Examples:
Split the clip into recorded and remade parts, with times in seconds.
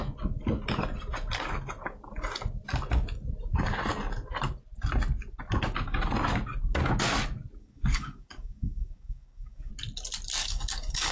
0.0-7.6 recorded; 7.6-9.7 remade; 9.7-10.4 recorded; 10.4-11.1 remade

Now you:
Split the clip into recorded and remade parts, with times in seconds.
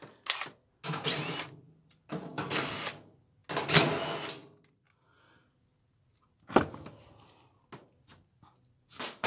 0.0-2.3 recorded; 2.3-2.9 remade; 2.9-9.3 recorded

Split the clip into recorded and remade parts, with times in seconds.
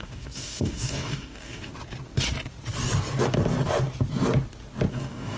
0.0-1.7 remade; 1.7-4.9 recorded; 4.9-5.4 remade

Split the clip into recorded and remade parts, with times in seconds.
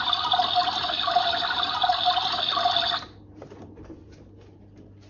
0.0-5.1 recorded